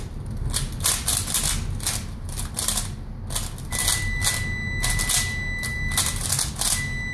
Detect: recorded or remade recorded